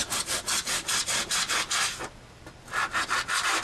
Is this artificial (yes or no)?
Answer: no